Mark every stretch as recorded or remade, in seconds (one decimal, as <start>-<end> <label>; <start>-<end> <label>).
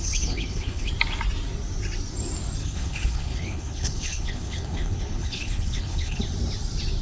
0.0-0.9 remade; 0.9-2.6 recorded; 2.6-6.2 remade; 6.2-7.0 recorded